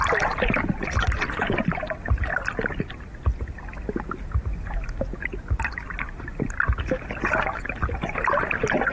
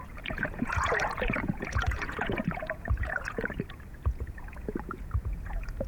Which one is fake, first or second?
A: second